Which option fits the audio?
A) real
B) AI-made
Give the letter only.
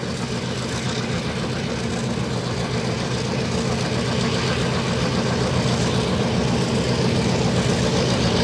A